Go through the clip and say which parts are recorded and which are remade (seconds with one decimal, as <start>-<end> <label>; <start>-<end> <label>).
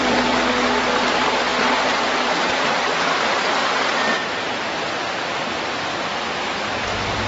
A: 0.0-1.5 remade; 1.5-2.7 recorded; 2.7-3.6 remade; 3.6-6.0 recorded; 6.0-7.3 remade